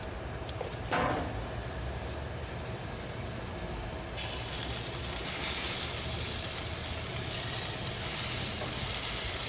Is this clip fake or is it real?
real